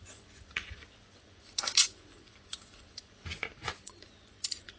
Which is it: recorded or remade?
remade